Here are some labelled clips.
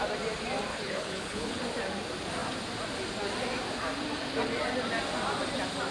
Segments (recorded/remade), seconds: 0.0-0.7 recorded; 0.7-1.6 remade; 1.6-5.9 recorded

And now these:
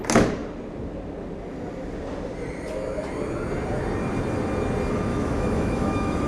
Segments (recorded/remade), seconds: 0.0-5.1 recorded; 5.1-6.3 remade